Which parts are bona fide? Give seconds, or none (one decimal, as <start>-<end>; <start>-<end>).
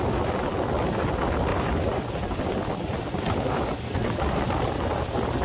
0.0-1.5; 2.4-5.4